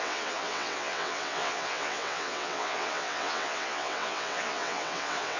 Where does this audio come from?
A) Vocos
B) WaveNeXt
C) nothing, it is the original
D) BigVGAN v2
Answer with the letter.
B